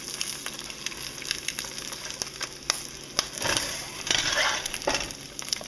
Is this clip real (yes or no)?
yes